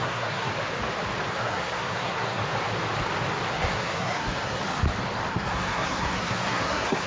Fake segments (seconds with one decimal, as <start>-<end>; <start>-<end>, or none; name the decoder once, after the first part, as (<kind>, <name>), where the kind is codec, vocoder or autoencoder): 0.0-0.5 (codec, SNAC); 1.3-2.4; 3.5-4.6; 5.3-7.1